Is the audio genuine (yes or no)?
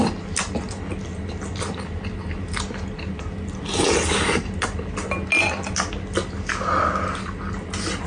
yes